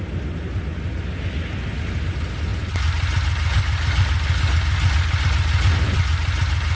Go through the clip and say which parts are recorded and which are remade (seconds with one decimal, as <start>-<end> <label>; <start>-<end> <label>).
0.0-6.7 recorded